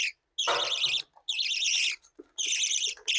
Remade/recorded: recorded